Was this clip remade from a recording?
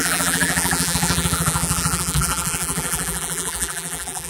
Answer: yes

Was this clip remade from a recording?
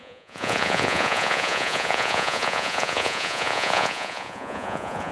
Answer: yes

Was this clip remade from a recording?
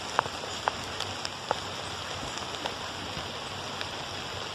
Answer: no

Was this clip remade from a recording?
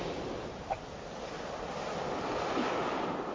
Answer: yes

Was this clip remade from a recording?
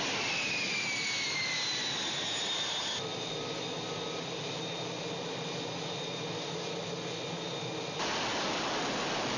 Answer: no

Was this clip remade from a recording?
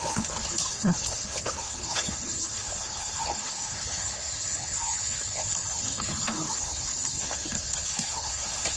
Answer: yes